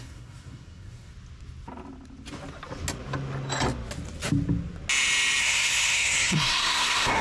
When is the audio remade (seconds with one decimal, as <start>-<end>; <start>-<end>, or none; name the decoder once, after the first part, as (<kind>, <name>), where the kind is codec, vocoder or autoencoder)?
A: 0.0-1.1 (codec, SNAC); 5.4-7.2